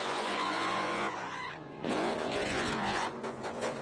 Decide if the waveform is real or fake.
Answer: fake